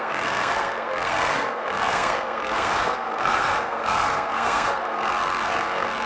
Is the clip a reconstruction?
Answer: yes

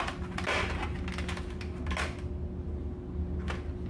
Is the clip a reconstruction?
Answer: no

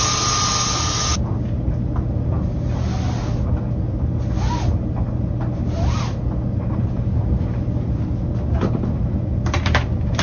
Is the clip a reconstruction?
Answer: no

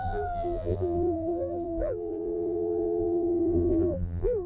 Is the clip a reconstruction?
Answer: yes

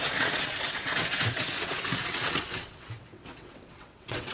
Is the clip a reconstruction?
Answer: yes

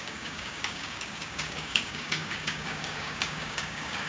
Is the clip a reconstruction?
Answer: yes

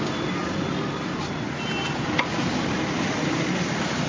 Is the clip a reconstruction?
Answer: no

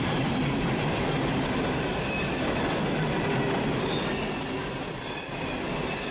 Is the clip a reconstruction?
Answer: no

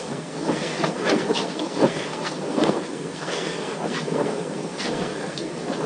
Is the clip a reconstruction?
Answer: yes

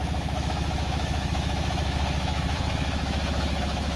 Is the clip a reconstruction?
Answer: yes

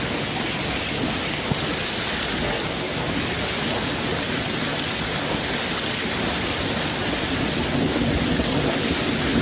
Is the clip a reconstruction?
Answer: no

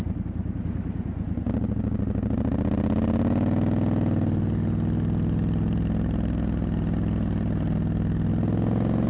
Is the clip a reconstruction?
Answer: no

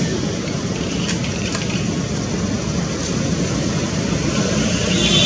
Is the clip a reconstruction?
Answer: no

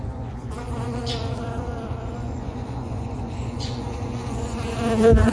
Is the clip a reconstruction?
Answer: yes